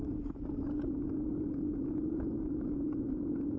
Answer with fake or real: real